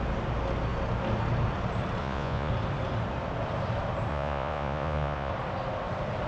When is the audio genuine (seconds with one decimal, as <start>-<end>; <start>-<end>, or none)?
0.0-2.0; 2.5-4.1; 5.3-6.3